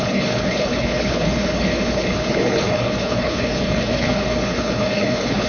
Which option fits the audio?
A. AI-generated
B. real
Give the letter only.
A